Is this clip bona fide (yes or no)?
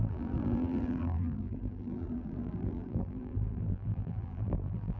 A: no